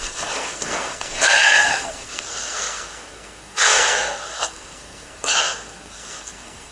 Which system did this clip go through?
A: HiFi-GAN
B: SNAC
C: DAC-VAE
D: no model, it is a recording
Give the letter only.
B